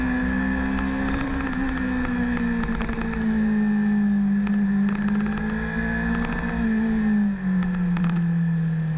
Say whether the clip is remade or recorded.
recorded